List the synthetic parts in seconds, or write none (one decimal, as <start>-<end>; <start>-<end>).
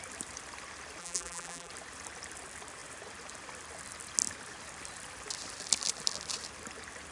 1.0-1.7